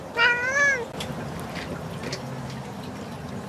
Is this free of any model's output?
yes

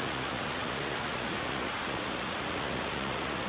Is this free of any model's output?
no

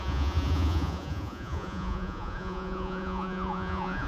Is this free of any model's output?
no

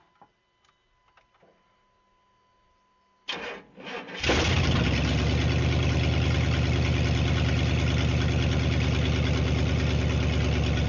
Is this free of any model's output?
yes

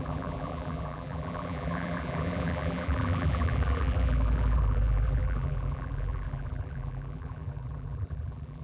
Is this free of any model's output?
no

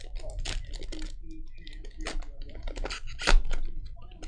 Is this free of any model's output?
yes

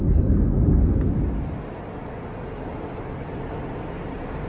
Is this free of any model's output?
yes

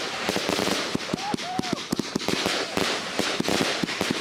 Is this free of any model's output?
no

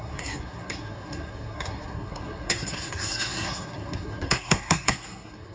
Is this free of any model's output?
no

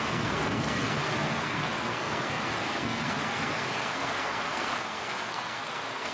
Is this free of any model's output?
no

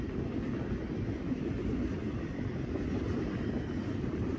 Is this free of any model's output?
yes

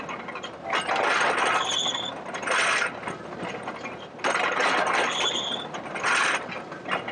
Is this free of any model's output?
yes